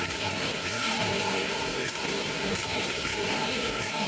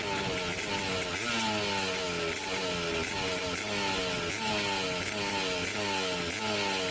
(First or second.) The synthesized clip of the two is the first